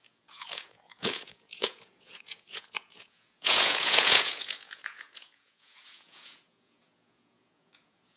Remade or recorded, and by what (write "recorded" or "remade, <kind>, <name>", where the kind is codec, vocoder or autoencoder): remade, vocoder, Vocos